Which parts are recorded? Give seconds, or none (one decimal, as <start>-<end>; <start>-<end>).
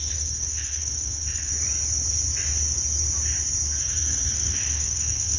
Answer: 1.5-3.8